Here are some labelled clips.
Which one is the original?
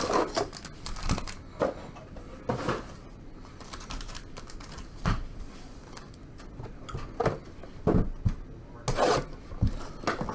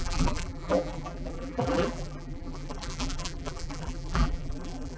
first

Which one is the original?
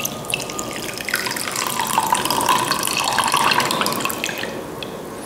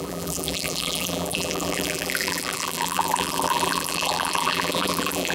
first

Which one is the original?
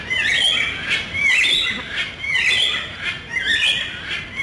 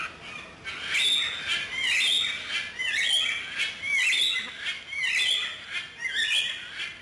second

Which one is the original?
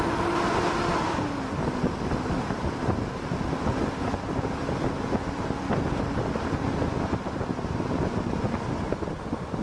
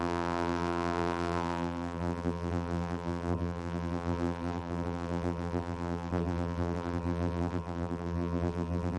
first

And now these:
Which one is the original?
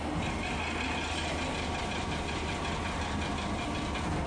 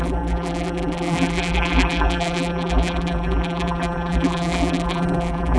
first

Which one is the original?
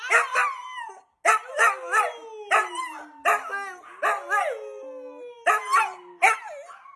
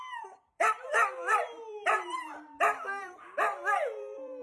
first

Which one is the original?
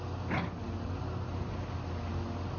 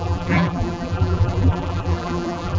first